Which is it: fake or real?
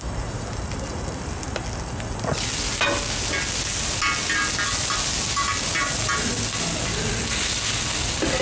real